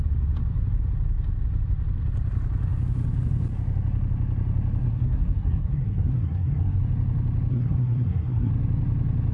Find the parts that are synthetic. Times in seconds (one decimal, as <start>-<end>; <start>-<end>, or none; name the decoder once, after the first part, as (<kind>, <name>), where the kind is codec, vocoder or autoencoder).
4.8-6.8 (codec, SNAC); 7.5-8.5